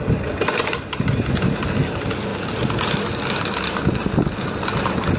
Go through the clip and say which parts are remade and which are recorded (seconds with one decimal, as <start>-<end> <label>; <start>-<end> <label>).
0.0-5.2 recorded